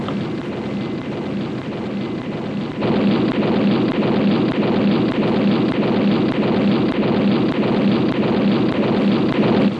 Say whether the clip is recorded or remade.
recorded